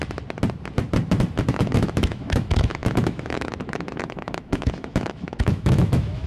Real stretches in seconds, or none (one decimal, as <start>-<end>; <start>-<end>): 0.0-1.5